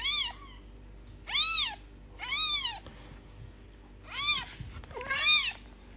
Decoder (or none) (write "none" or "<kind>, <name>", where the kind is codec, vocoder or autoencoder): none